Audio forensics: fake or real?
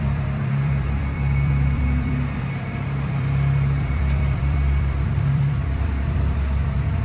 fake